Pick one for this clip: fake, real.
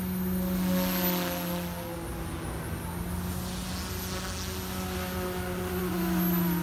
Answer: real